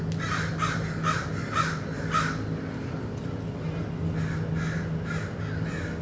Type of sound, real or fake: real